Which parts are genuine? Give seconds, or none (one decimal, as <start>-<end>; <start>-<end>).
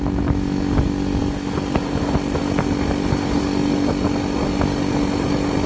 0.0-5.7